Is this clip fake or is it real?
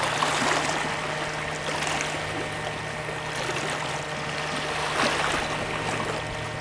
real